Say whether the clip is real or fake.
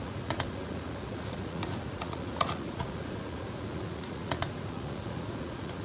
fake